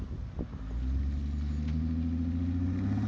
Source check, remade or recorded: recorded